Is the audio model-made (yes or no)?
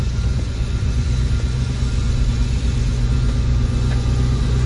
yes